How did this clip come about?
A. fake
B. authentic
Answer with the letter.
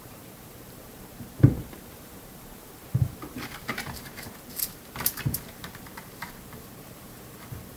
A